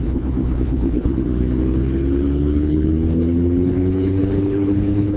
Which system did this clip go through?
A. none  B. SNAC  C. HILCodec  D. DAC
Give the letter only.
C